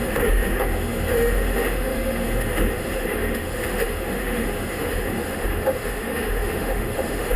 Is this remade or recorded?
remade